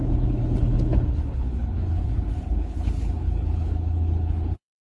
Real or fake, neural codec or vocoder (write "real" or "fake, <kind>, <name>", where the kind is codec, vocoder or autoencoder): fake, codec, HILCodec